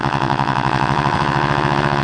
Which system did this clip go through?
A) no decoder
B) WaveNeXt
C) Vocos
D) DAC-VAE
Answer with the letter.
B